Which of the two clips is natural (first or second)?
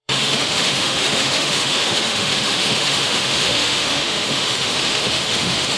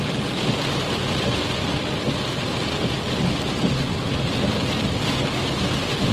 second